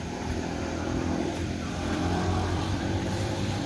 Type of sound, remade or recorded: remade